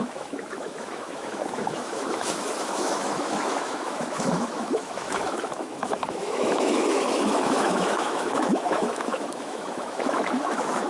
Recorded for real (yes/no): no